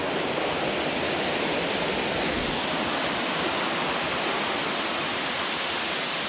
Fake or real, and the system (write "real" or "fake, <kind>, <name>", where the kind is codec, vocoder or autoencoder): real